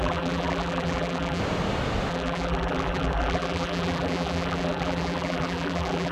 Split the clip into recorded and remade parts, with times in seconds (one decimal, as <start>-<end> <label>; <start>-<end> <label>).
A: 0.0-1.4 remade; 1.4-2.1 recorded; 2.1-6.1 remade